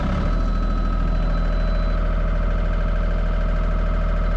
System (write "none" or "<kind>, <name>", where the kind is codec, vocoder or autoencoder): none